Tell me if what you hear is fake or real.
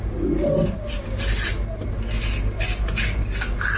real